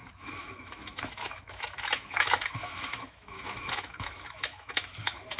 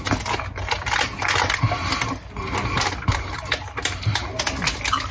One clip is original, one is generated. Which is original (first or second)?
second